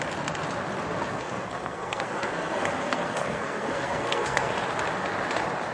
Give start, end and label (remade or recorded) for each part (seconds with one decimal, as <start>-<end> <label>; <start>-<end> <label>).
0.0-1.1 recorded; 1.1-4.5 remade; 4.5-5.7 recorded